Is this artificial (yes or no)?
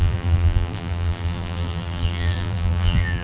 yes